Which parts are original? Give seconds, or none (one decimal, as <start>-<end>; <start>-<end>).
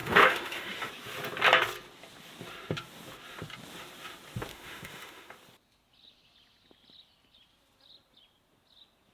0.9-4.5; 5.3-9.1